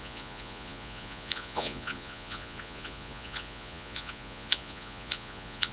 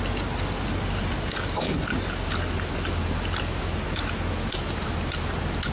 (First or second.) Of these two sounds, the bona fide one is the second